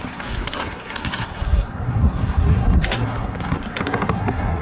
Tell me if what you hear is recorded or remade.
remade